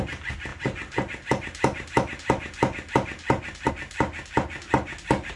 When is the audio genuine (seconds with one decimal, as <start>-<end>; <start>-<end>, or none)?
0.0-5.4